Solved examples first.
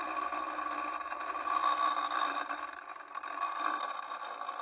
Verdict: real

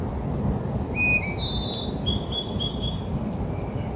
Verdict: real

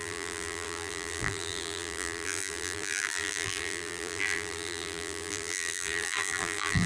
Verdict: fake